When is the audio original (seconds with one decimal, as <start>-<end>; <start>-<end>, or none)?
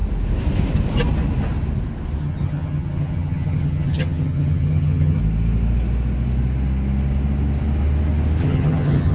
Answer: 0.0-2.2; 5.2-8.4